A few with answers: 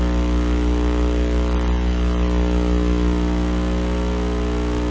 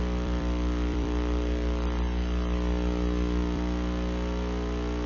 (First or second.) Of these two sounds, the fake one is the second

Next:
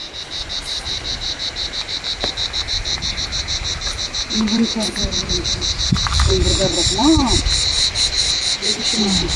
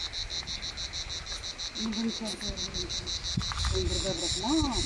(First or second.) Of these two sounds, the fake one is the first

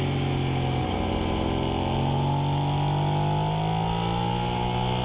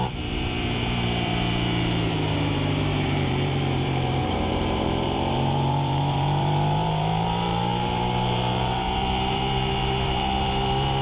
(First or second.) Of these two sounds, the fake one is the second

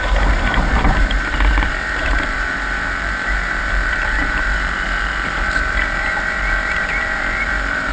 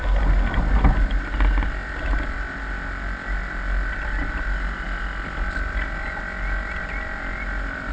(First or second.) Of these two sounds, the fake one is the first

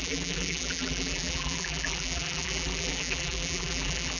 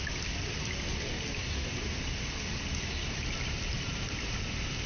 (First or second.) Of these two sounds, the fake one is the first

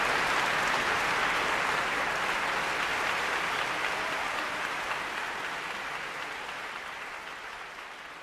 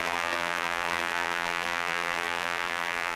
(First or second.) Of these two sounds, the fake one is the second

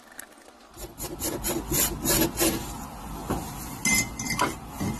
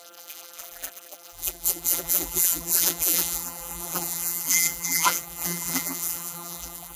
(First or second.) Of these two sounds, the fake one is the second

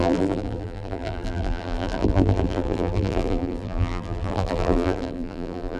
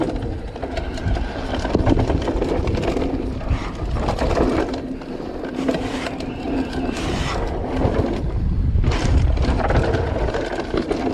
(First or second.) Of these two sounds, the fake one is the first